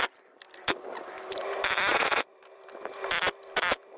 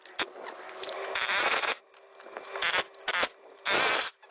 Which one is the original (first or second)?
second